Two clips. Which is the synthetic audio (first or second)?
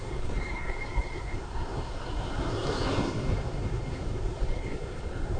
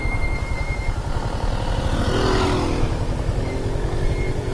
first